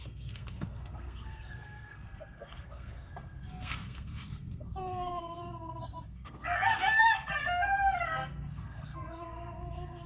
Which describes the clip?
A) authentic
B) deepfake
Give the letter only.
B